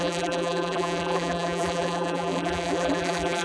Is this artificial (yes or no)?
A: yes